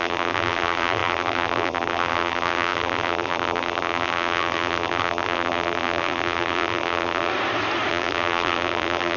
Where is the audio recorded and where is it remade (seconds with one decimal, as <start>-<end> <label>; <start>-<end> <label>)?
0.0-7.3 remade; 7.3-7.9 recorded; 7.9-9.2 remade